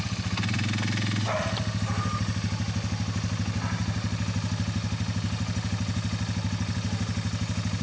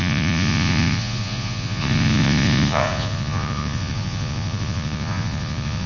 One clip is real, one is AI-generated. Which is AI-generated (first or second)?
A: second